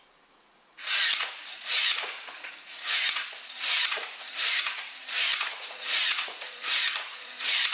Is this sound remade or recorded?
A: remade